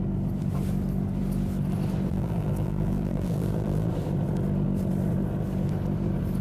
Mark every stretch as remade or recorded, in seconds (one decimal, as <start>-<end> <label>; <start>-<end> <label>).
0.0-2.1 recorded; 2.1-3.9 remade; 3.9-6.4 recorded